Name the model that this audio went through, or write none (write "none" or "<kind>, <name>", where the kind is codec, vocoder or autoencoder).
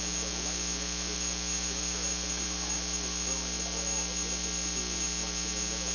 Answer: none